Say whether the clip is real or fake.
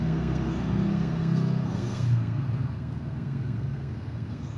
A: fake